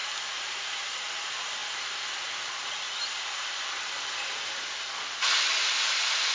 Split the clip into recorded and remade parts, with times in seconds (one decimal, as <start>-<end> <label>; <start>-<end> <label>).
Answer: 0.0-6.3 remade